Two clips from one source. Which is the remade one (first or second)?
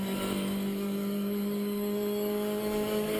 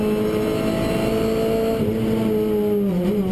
first